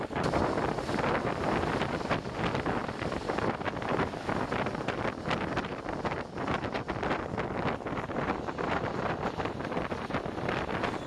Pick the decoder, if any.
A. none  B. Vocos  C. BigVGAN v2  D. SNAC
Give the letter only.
A